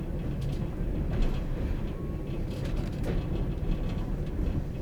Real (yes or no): yes